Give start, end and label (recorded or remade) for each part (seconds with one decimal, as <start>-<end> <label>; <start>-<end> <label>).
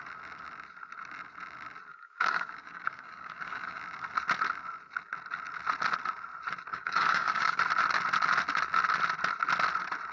0.0-1.9 recorded; 1.9-3.8 remade; 3.8-6.7 recorded; 6.7-7.6 remade; 7.6-10.1 recorded